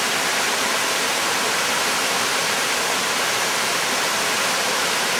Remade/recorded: recorded